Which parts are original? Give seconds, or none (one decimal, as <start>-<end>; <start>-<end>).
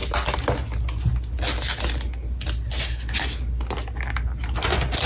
0.0-5.1